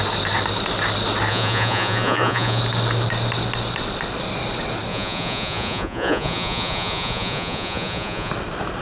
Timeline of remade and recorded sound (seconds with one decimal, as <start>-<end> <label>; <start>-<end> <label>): 0.0-1.3 recorded; 1.3-2.6 remade; 2.6-4.9 recorded; 4.9-8.3 remade; 8.3-8.8 recorded